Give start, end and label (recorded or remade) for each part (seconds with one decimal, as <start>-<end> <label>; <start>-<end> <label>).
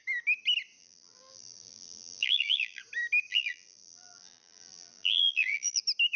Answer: 0.0-0.8 recorded; 0.8-2.8 remade; 2.8-3.3 recorded; 3.3-5.8 remade; 5.8-6.2 recorded